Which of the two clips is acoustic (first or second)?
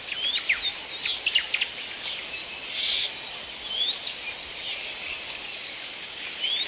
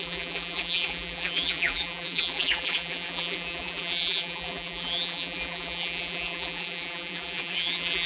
first